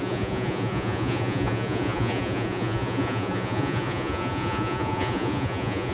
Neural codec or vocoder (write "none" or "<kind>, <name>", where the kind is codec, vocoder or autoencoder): vocoder, Vocos